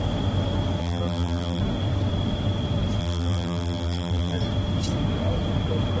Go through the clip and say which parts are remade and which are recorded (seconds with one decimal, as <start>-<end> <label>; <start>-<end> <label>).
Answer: 0.0-0.8 recorded; 0.8-1.6 remade; 1.6-3.0 recorded; 3.0-4.4 remade; 4.4-6.0 recorded